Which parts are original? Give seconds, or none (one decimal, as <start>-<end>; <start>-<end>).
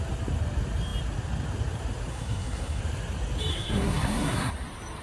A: 0.0-2.1; 2.8-3.5; 4.5-5.0